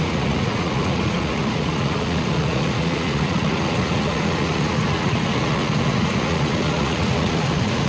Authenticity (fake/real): fake